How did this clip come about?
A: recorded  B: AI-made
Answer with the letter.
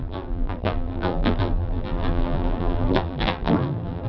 B